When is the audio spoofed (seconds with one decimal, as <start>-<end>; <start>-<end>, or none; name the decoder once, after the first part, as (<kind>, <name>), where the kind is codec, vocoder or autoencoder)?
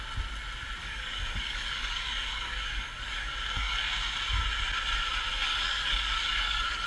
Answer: 0.8-3.9 (codec, DAC); 5.5-6.9